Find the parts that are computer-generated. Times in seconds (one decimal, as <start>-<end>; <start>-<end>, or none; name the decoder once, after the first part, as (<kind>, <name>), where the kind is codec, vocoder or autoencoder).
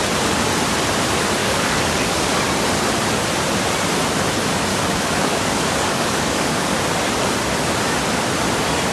1.4-2.4 (codec, DAC); 4.7-6.7